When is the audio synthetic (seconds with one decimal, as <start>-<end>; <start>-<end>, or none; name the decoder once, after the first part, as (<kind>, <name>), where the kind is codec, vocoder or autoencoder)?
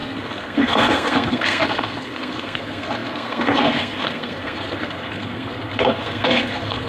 0.0-6.9 (codec, SNAC)